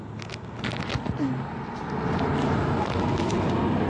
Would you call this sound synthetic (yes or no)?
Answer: no